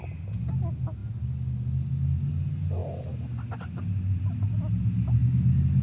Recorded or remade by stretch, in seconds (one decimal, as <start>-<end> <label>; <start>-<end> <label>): 0.0-5.8 recorded